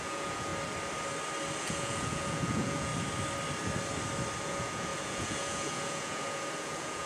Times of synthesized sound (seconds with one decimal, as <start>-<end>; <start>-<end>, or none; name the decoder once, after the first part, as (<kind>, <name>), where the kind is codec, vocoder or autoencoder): 0.0-0.5 (vocoder, Vocos); 1.6-2.9; 4.4-7.1